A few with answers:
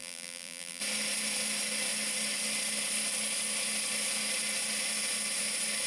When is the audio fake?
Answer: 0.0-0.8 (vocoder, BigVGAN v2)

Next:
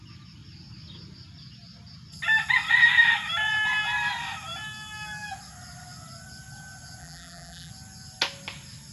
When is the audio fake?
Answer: 7.0-7.7 (vocoder, BigVGAN v2)

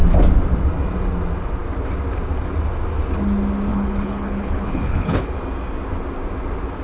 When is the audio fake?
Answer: 3.7-5.3 (codec, HILCodec)

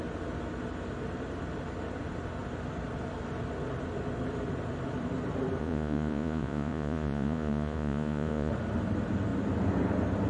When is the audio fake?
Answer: 5.6-8.5 (vocoder, Vocos)

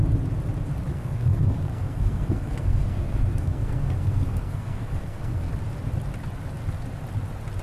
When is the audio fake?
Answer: 0.9-5.5 (codec, SNAC)

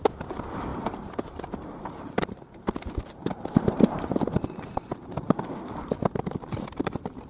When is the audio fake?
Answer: 0.0-7.3 (vocoder, BigVGAN v2)

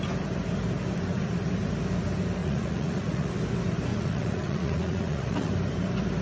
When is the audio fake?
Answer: 2.4-3.3 (vocoder, Vocos); 3.9-5.5